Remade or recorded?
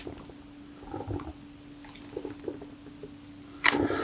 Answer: recorded